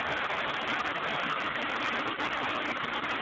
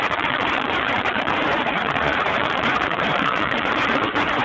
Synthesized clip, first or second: second